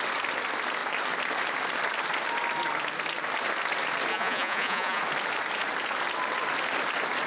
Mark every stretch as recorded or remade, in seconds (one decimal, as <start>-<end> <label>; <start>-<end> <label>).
0.0-4.1 recorded; 4.1-5.0 remade; 5.0-7.3 recorded